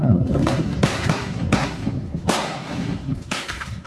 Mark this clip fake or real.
fake